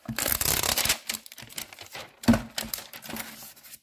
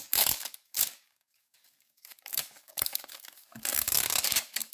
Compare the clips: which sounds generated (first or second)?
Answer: second